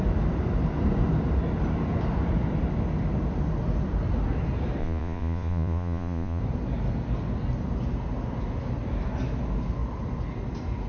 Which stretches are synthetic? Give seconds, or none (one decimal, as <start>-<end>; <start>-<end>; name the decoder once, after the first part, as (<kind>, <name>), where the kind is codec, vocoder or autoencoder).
4.8-6.4 (vocoder, Vocos)

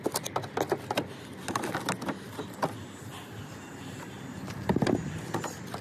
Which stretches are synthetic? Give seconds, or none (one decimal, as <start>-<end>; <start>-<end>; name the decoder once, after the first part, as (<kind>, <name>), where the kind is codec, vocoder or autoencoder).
none

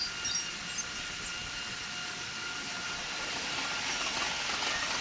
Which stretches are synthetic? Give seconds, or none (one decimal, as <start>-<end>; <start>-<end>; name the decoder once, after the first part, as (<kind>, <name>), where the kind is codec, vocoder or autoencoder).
none

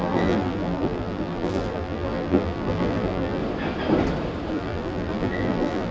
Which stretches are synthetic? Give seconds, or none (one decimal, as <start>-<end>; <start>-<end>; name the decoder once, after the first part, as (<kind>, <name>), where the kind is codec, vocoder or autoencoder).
0.0-3.4 (vocoder, BigVGAN v2); 4.5-5.9

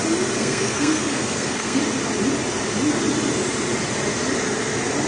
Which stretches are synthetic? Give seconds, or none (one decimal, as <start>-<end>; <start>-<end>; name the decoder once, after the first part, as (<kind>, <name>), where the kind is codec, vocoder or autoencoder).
0.4-1.8 (codec, SNAC)

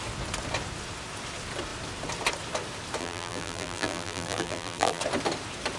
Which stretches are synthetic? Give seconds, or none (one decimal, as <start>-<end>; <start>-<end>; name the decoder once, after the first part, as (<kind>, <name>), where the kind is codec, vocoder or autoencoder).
3.0-5.0 (vocoder, BigVGAN v2)

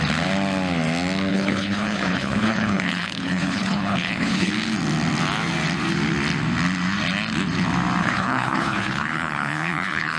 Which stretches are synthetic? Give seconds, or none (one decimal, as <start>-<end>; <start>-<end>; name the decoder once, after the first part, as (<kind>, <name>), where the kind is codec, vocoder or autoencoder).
1.3-4.5 (codec, HILCodec); 8.0-10.2

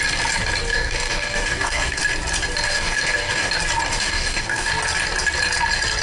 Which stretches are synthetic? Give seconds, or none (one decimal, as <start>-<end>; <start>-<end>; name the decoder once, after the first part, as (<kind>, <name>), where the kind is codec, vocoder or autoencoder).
0.7-2.0 (codec, DAC); 2.7-3.5; 3.9-4.7